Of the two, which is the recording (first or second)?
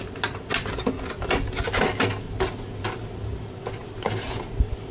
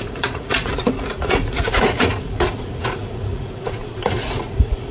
first